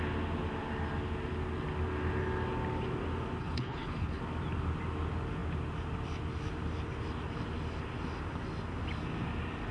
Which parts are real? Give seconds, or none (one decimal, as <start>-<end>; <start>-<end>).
0.0-3.4; 4.2-9.7